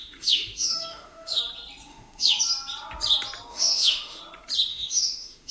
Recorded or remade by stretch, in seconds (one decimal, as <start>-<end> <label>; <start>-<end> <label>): 0.0-1.4 remade; 1.4-1.9 recorded; 1.9-2.4 remade; 2.4-3.5 recorded; 3.5-4.2 remade; 4.2-4.7 recorded; 4.7-5.5 remade